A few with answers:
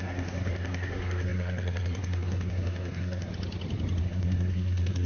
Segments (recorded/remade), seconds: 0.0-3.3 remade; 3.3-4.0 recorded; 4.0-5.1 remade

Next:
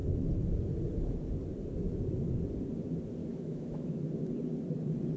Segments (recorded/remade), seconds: 0.0-3.2 recorded; 3.2-4.0 remade; 4.0-5.2 recorded